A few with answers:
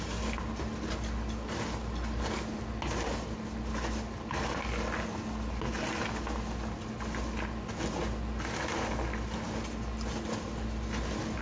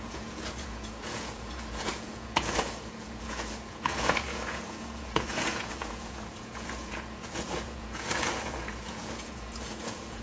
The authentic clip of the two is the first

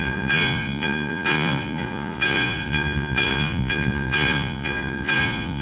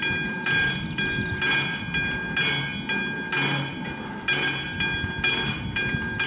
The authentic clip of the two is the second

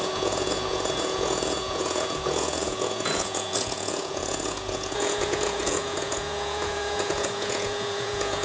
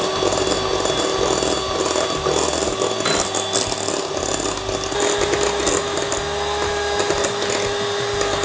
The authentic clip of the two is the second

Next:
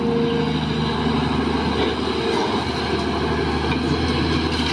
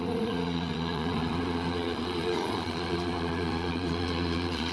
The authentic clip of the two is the first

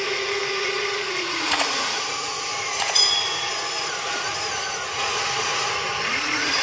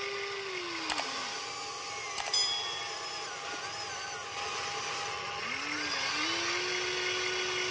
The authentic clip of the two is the second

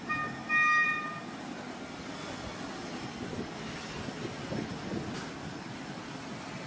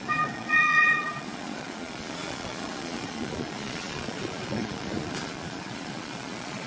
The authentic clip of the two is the first